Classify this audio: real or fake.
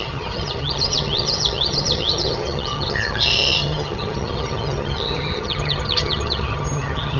fake